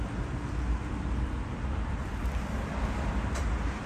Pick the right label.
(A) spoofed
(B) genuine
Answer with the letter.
A